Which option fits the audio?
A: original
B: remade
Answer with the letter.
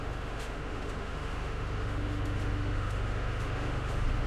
B